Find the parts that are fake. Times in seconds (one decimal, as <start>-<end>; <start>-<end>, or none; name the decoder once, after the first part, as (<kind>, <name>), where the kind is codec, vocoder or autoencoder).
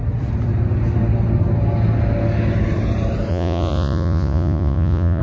3.3-5.2 (vocoder, Vocos)